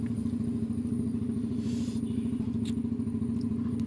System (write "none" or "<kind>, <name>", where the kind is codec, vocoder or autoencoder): vocoder, BigVGAN v2